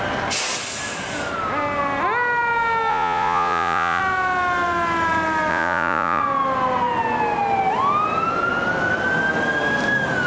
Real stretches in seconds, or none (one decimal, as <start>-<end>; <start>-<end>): 0.0-2.9; 4.0-5.5; 6.2-10.3